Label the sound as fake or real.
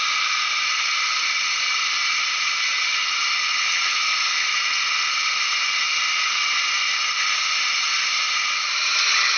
real